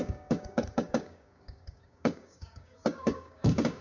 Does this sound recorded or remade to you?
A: remade